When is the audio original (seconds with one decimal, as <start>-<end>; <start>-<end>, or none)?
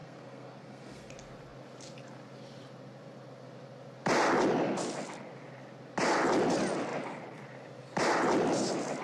1.1-9.0